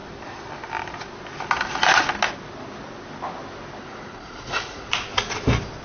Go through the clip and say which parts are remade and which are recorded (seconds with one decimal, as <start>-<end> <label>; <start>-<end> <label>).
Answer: 0.0-3.8 recorded; 3.8-4.9 remade; 4.9-5.8 recorded